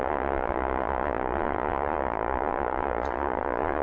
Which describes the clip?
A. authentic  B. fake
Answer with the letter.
B